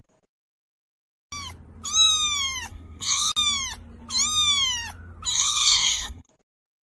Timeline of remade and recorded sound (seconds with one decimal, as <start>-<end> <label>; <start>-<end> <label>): 0.0-2.7 recorded; 2.7-3.3 remade; 3.3-5.3 recorded; 5.3-6.3 remade; 6.3-6.8 recorded